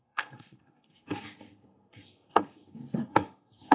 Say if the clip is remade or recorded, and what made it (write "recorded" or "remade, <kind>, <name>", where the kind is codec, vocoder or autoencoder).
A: remade, codec, SNAC